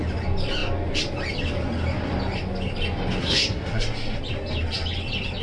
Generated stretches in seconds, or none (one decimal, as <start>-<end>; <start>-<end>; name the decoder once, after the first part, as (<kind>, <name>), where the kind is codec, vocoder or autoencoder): 3.2-4.2 (codec, SNAC)